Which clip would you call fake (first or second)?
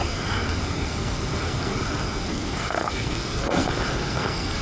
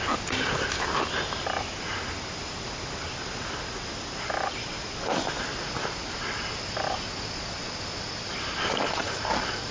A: first